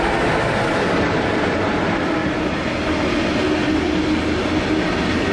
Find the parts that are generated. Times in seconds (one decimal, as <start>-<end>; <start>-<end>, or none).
none